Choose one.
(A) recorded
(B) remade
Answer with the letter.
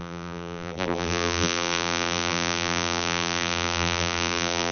B